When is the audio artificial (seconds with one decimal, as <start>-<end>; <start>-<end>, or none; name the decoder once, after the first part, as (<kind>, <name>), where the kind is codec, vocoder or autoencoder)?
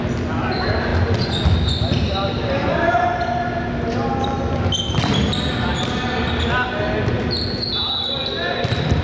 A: none